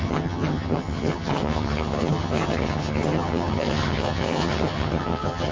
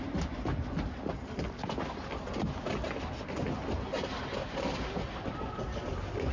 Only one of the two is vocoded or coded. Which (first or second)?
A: first